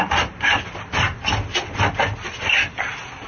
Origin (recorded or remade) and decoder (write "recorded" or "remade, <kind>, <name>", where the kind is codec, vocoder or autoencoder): recorded